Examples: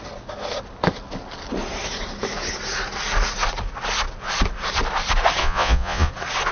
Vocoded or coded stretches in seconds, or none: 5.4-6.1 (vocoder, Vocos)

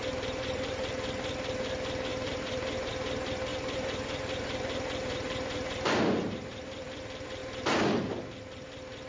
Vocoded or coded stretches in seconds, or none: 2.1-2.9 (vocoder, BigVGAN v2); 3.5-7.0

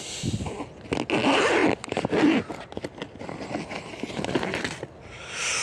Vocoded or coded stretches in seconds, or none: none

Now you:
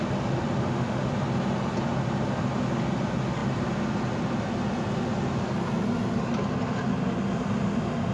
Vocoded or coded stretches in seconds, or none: 0.6-1.1 (autoencoder, DAC-VAE)

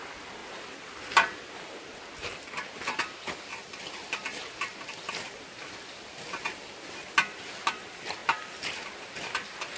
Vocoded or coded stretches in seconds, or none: none